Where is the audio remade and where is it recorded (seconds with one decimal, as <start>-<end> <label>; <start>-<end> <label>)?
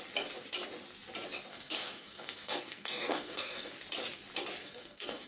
0.0-1.5 recorded; 1.5-3.7 remade; 3.7-4.6 recorded; 4.6-5.3 remade